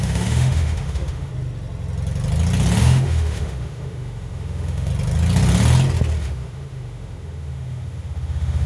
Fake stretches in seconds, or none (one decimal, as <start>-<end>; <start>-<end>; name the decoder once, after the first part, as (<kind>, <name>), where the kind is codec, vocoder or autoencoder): 0.0-1.3 (autoencoder, DAC-VAE); 2.8-4.9; 6.2-8.7